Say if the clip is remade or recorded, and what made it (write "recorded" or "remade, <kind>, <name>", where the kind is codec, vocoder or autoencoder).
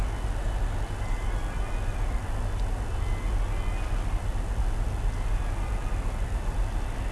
recorded